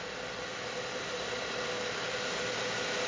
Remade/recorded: recorded